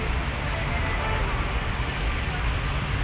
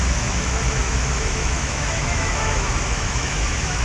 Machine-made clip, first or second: second